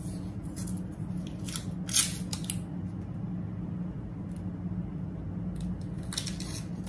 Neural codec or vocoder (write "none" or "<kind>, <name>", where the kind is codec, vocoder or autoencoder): none